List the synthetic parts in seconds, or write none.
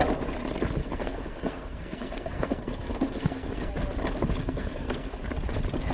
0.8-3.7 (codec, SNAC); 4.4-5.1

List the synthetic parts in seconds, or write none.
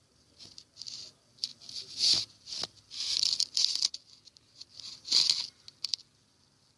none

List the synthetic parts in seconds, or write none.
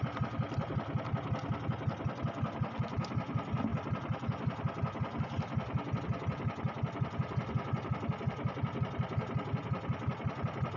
none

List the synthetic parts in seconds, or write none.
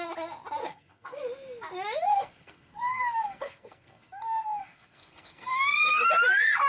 0.6-1.2 (codec, SNAC); 2.1-6.1